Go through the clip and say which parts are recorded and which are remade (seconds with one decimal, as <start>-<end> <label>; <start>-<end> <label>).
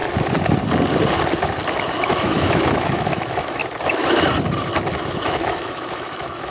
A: 0.0-2.0 recorded; 2.0-3.6 remade; 3.6-4.9 recorded; 4.9-6.5 remade